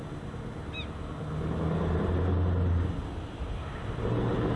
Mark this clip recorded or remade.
recorded